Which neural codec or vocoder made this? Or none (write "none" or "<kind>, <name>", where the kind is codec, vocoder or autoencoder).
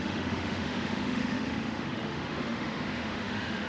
autoencoder, DAC-VAE